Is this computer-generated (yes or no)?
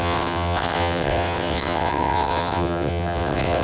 yes